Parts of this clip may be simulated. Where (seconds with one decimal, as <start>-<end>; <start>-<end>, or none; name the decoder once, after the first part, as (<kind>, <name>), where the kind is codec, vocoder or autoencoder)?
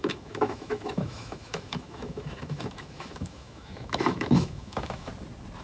0.0-5.1 (autoencoder, DAC-VAE)